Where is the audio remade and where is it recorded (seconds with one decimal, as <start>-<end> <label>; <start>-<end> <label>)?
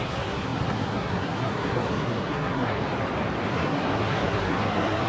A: 0.0-2.8 remade; 2.8-3.5 recorded; 3.5-5.1 remade